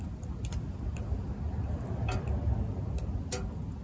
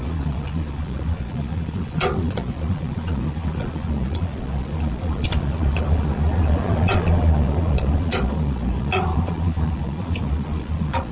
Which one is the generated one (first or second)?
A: second